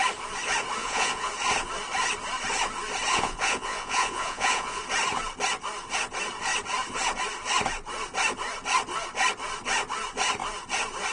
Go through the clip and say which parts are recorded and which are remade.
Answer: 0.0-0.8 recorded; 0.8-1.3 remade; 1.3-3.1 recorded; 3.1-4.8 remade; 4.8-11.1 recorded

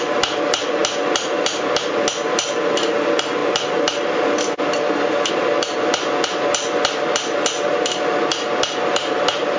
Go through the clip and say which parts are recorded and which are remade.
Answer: 0.0-9.6 recorded